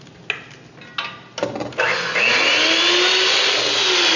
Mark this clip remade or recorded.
recorded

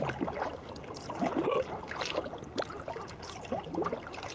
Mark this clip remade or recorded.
recorded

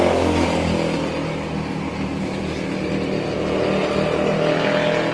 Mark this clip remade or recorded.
recorded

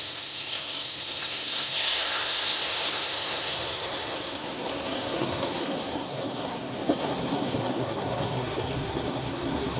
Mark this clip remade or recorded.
remade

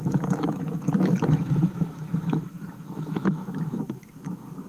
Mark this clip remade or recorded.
remade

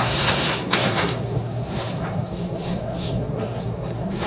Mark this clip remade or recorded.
remade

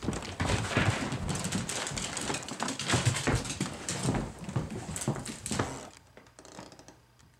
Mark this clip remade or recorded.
recorded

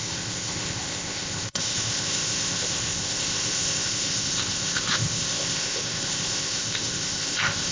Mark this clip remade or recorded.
remade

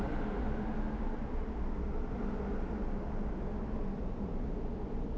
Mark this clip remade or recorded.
recorded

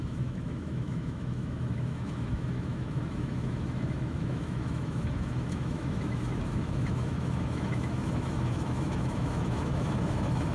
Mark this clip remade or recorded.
remade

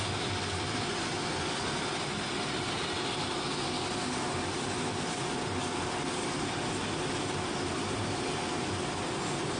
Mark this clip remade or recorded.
recorded